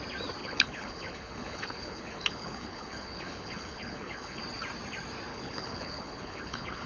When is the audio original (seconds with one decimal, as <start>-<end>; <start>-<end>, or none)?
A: 0.0-0.4; 4.4-5.3